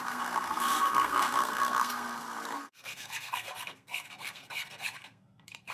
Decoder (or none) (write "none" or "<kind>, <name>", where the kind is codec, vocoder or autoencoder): codec, SNAC